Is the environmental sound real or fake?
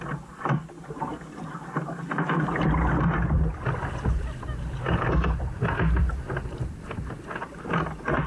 real